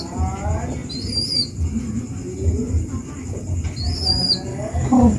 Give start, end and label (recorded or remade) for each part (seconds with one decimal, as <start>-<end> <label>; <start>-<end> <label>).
0.0-4.5 recorded; 4.5-5.2 remade